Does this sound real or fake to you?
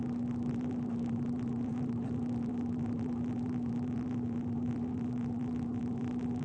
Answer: fake